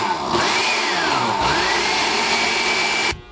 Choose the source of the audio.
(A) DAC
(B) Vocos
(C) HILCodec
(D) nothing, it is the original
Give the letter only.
D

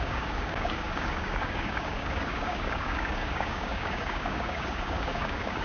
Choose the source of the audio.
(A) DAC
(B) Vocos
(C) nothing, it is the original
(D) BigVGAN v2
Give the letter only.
A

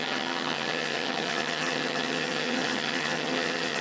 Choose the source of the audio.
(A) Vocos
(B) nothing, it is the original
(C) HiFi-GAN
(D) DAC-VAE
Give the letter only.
C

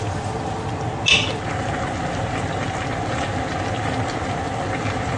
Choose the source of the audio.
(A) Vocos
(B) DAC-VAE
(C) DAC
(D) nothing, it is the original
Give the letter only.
D